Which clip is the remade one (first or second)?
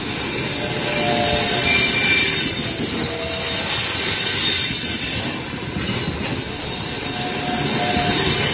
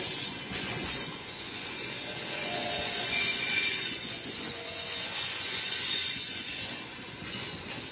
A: second